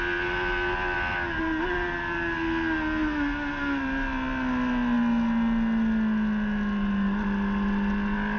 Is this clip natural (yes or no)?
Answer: yes